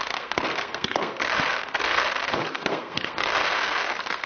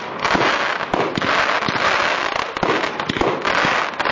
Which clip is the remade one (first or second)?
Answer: first